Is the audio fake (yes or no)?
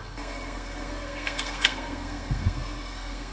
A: yes